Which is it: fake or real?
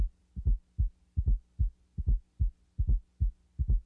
real